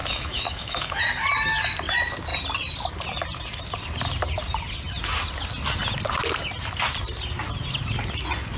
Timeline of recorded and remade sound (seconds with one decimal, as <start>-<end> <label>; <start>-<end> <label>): 0.0-1.0 remade; 1.0-8.6 recorded